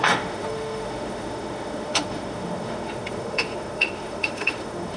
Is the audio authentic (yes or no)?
no